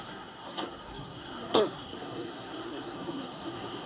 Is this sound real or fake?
fake